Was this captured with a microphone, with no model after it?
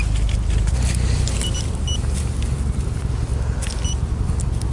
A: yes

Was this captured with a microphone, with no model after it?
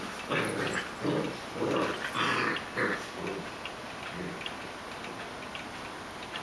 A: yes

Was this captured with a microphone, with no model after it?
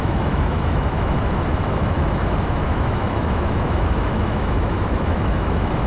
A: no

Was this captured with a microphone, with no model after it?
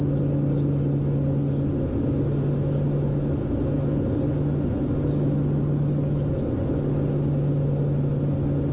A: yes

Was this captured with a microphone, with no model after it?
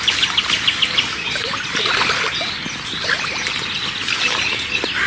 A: yes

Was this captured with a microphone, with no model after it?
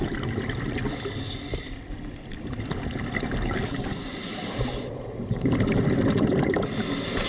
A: yes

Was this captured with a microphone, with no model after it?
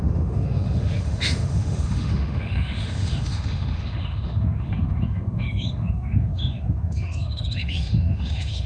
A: no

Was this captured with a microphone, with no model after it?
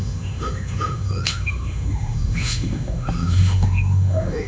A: no